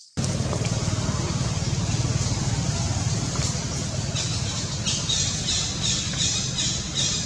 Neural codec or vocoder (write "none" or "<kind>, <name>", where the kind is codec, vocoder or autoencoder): none